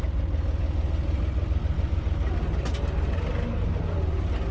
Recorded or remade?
recorded